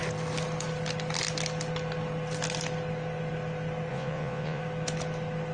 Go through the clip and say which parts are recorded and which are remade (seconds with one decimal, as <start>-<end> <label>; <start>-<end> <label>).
0.0-3.9 recorded; 3.9-4.6 remade; 4.6-5.5 recorded